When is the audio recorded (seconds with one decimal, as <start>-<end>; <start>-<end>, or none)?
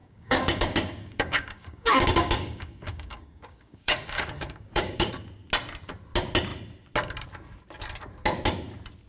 5.1-9.1